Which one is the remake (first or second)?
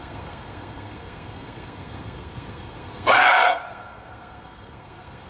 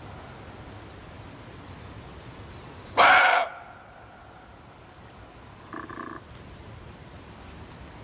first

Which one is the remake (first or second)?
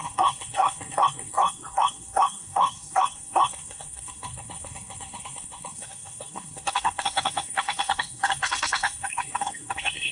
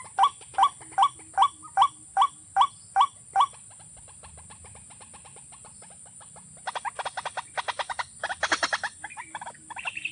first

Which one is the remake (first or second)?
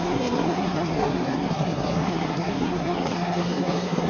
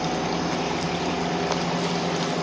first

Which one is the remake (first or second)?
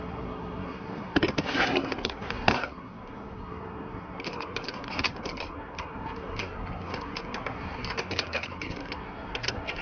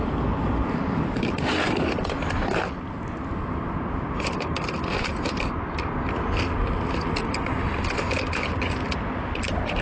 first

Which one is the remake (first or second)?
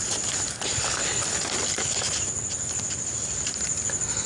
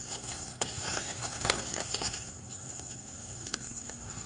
second